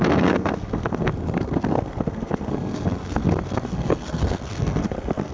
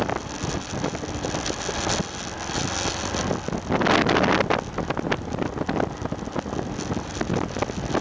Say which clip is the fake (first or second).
first